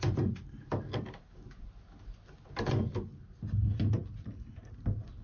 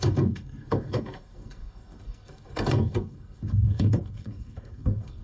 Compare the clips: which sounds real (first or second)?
first